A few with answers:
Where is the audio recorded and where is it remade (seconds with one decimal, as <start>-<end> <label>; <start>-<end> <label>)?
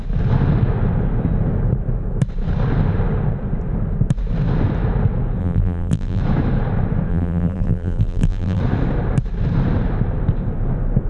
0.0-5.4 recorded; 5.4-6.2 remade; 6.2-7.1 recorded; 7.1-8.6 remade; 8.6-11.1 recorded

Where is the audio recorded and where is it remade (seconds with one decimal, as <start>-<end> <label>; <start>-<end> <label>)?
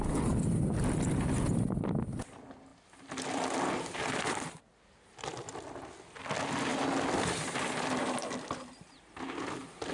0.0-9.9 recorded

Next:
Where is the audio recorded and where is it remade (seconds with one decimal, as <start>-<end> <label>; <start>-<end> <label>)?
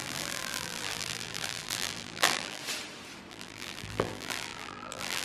0.0-2.6 remade; 2.6-3.3 recorded; 3.3-5.2 remade